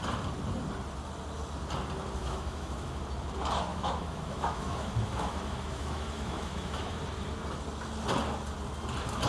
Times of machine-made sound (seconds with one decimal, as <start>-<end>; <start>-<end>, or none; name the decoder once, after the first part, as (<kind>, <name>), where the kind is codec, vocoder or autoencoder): 2.2-3.0 (autoencoder, DAC-VAE); 3.7-7.0